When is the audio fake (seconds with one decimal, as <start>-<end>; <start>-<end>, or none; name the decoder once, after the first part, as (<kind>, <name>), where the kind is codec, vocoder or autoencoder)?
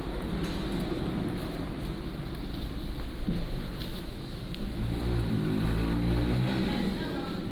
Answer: 3.9-5.0 (autoencoder, DAC-VAE)